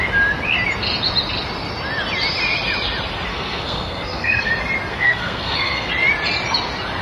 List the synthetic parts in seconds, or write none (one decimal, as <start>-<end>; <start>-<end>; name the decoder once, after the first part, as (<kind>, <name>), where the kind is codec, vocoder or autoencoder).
3.3-4.5 (codec, SNAC); 4.9-5.9